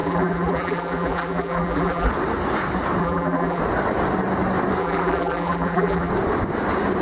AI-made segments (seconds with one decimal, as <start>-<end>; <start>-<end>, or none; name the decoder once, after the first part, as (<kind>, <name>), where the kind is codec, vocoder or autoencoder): 0.0-2.1 (vocoder, BigVGAN v2); 3.0-3.6; 4.8-6.1